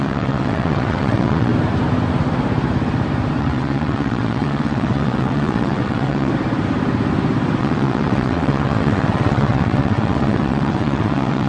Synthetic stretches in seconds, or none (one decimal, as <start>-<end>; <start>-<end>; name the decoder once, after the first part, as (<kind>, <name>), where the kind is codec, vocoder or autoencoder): 0.0-1.5 (vocoder, WaveNeXt); 3.4-6.3; 7.6-11.5